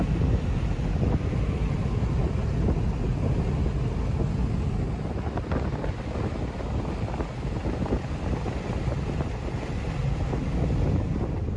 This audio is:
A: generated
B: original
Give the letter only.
B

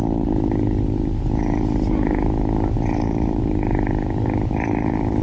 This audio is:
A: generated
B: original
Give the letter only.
B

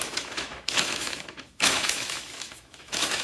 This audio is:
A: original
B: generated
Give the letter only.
B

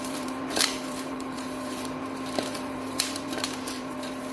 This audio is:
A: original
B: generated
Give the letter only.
B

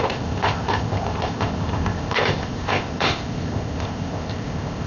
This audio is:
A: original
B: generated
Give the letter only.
B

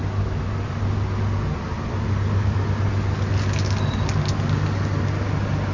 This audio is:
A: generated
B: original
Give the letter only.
B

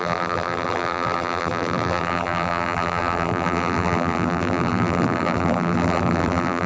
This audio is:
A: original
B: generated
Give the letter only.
B